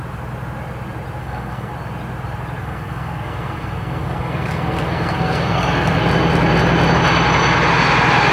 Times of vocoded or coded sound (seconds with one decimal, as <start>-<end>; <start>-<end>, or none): 1.2-1.7; 2.6-6.0